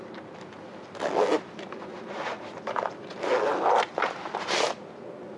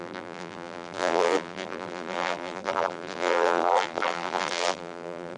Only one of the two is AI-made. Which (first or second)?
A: second